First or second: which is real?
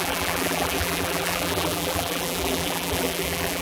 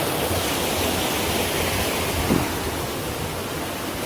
second